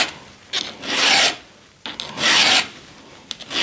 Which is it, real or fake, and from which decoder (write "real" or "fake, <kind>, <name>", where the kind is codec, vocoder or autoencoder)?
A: real